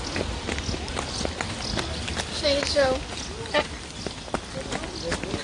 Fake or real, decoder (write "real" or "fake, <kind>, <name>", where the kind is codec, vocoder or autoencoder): real